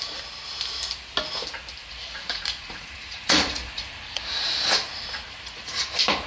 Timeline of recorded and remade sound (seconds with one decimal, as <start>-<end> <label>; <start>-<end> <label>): 0.0-1.8 recorded; 1.8-4.2 remade; 4.2-4.9 recorded; 4.9-5.8 remade; 5.8-6.3 recorded